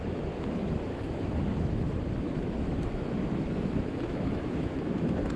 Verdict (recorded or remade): remade